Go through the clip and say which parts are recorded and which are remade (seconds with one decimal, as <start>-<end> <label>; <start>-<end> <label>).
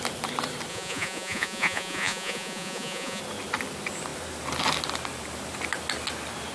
0.0-0.7 recorded; 0.7-3.2 remade; 3.2-6.5 recorded